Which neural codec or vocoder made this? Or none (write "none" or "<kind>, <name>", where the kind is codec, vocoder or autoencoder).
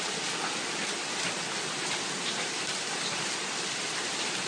none